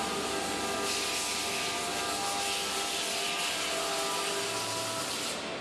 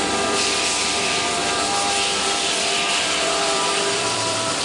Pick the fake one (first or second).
second